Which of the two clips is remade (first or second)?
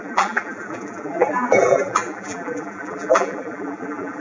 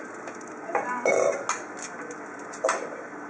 first